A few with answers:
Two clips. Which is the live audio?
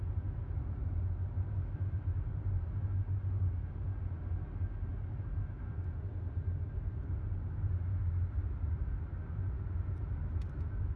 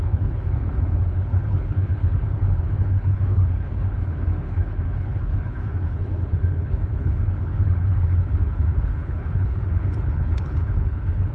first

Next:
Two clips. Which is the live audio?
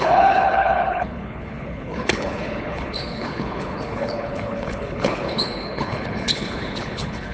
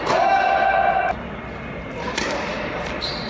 second